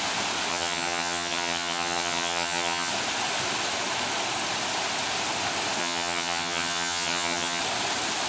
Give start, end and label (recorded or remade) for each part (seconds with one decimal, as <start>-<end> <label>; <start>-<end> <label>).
0.0-0.5 recorded; 0.5-2.9 remade; 2.9-5.8 recorded; 5.8-7.6 remade; 7.6-8.3 recorded